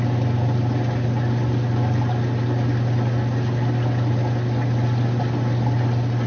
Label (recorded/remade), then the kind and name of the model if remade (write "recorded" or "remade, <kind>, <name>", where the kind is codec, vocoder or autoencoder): recorded